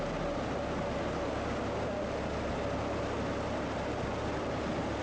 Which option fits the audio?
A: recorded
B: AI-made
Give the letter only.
A